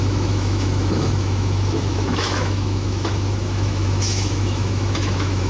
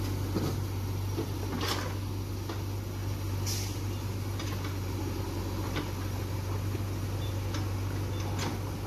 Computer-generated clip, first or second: first